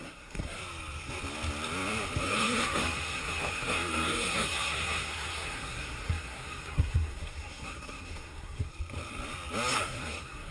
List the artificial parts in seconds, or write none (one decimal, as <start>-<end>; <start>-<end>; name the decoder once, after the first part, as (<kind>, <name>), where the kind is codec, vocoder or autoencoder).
0.0-0.6 (codec, SNAC); 2.2-8.7; 9.7-10.5